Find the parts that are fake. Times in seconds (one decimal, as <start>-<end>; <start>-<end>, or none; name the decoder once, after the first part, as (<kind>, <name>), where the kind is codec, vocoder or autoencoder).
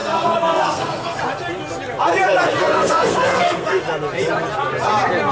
0.0-1.2 (codec, SNAC); 2.6-3.8